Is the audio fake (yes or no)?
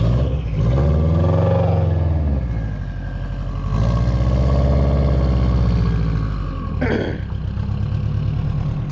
no